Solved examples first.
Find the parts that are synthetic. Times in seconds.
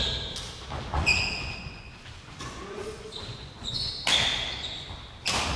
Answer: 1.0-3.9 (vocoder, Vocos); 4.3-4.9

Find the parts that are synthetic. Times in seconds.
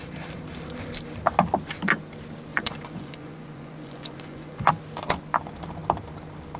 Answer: 2.5-4.7 (vocoder, Vocos)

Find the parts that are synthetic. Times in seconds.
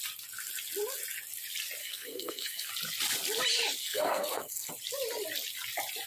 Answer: 1.8-2.7 (codec, SNAC); 3.8-4.7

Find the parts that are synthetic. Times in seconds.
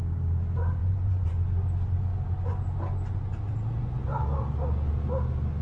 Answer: 0.8-1.3 (vocoder, Vocos)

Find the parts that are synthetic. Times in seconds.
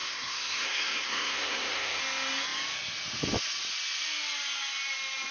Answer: 0.0-2.0 (codec, SNAC)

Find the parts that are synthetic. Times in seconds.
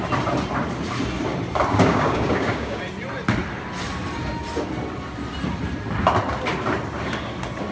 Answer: 1.7-2.8 (codec, DAC)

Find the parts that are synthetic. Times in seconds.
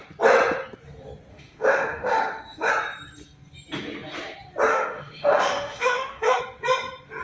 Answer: 1.3-2.7 (autoencoder, DAC-VAE); 4.7-6.4